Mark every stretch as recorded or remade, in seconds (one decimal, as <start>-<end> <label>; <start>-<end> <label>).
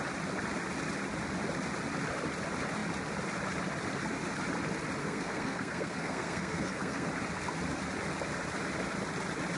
0.0-5.0 recorded; 5.0-7.1 remade; 7.1-9.6 recorded